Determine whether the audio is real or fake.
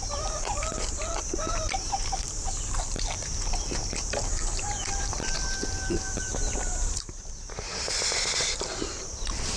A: fake